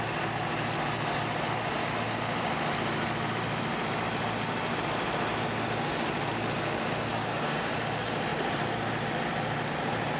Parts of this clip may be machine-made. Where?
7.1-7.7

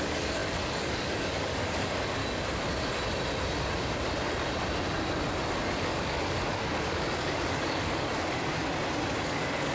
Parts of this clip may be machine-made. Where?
0.0-2.2; 5.8-8.6; 9.2-9.7

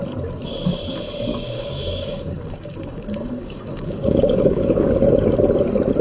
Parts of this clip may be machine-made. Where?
1.3-4.9

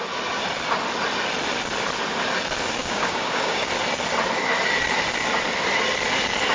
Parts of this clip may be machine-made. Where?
2.8-3.7

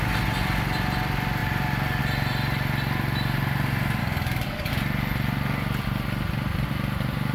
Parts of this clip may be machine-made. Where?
4.0-4.7